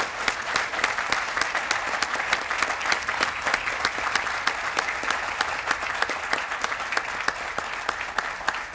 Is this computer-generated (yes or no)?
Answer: no